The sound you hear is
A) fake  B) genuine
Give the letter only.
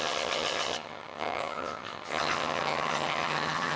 A